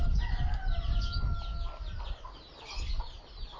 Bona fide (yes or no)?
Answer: yes